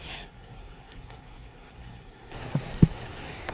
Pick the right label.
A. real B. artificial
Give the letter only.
B